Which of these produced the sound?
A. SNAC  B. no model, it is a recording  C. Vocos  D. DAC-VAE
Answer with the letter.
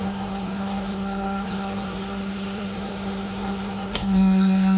A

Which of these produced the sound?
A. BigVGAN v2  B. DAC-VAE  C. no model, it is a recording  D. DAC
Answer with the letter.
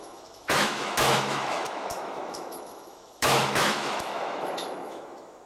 B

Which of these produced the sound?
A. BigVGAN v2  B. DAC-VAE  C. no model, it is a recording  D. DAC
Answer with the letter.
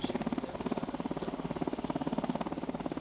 C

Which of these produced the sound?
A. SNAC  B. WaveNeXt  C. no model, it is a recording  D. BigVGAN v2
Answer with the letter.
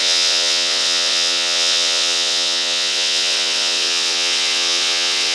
B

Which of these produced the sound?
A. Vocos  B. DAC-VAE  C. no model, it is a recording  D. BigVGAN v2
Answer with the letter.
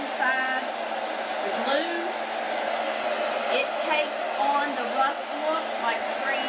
C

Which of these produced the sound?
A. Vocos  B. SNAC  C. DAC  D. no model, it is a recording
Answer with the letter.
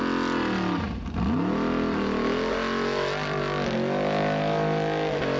D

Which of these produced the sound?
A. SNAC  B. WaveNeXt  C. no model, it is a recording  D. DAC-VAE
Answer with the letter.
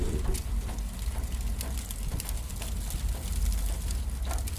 C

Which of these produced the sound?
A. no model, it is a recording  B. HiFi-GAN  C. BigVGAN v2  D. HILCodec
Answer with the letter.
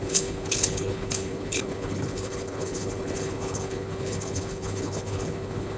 D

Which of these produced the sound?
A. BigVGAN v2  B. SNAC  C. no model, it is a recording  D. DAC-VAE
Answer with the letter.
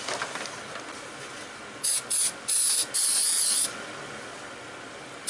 C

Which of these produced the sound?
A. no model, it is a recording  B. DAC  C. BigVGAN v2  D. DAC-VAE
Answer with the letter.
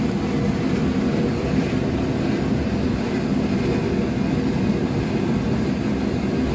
A